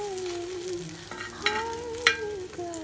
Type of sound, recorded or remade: recorded